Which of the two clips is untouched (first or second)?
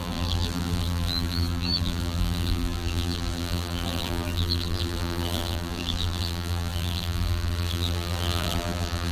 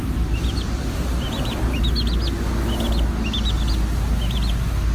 second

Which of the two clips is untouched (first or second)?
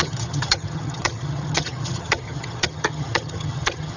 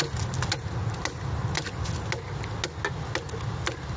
second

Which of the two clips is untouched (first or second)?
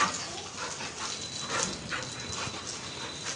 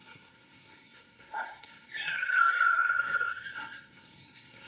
first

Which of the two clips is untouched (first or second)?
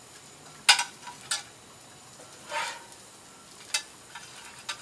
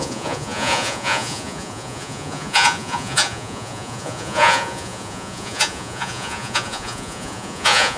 first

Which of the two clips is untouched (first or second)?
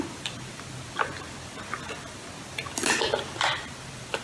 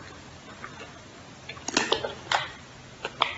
second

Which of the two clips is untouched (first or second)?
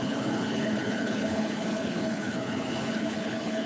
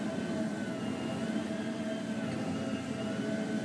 second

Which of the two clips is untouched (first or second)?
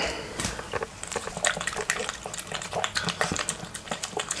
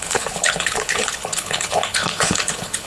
first